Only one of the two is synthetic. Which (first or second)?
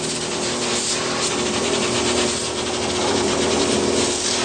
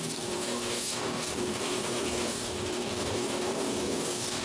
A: second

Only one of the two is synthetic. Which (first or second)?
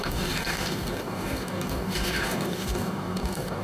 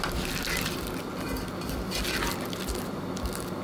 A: first